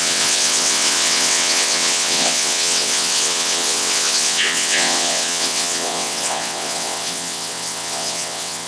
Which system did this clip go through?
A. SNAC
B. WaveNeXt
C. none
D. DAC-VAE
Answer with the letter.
B